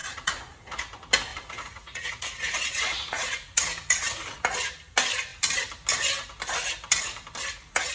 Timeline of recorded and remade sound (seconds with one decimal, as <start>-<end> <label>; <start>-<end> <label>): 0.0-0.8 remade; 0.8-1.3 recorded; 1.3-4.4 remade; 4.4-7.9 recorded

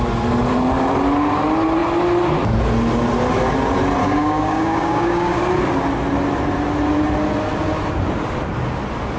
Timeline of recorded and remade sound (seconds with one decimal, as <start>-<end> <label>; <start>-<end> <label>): 0.0-4.0 recorded; 4.0-5.4 remade; 5.4-9.2 recorded

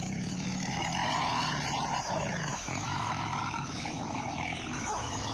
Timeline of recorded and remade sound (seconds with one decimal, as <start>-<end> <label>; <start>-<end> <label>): 0.0-1.0 remade; 1.0-2.0 recorded; 2.0-5.3 remade

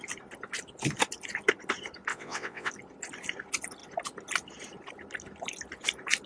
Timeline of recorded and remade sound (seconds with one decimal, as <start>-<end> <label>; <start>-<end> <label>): 0.0-2.1 recorded; 2.1-2.7 remade; 2.7-6.3 recorded

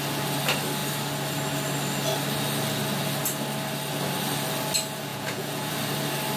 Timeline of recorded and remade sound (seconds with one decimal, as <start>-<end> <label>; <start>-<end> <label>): 0.0-5.1 recorded; 5.1-5.7 remade; 5.7-6.4 recorded

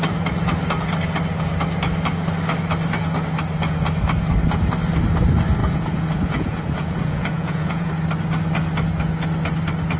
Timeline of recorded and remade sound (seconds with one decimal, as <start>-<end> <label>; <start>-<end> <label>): 0.0-5.6 recorded; 5.6-7.9 remade; 7.9-10.0 recorded

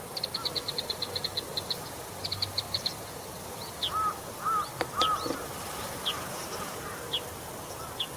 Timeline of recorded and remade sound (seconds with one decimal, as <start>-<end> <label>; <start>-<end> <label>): 0.0-8.2 recorded